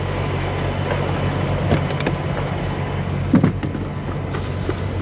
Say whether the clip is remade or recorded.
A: recorded